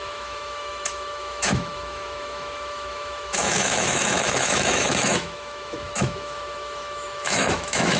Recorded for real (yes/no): no